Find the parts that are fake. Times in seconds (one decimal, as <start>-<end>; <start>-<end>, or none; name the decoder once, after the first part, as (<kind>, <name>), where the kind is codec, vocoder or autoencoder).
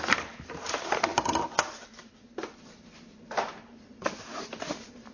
0.0-5.1 (vocoder, BigVGAN v2)